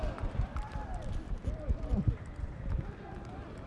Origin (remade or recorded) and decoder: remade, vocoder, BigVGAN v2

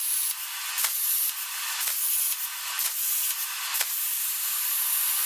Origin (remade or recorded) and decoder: recorded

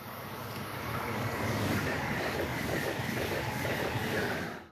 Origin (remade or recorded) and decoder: remade, codec, DAC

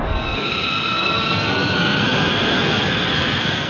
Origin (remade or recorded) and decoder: remade, codec, SNAC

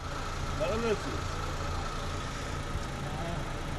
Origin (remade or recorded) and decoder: recorded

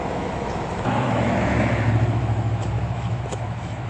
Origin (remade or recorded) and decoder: remade, autoencoder, DAC-VAE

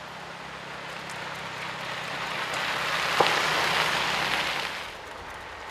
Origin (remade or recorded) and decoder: recorded